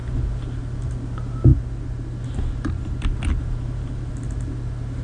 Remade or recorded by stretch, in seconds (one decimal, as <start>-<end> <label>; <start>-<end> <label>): 0.0-5.0 recorded